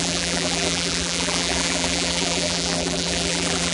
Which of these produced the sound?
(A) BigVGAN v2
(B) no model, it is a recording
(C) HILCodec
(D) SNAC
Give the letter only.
A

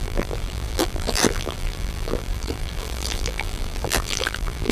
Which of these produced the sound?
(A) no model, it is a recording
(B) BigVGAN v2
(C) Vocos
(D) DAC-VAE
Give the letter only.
B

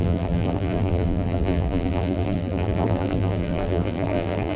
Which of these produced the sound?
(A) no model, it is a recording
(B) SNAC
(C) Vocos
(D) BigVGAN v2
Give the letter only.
D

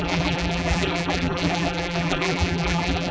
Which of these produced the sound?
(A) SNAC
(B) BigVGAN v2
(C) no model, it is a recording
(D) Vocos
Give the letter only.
B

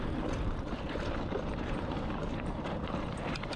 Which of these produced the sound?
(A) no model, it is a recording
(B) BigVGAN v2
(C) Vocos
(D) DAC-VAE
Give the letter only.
B